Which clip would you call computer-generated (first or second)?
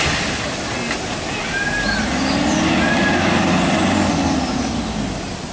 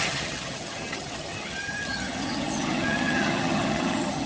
second